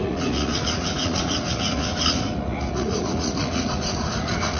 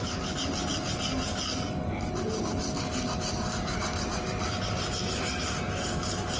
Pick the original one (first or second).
second